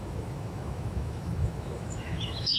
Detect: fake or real fake